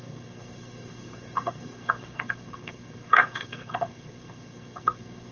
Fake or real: fake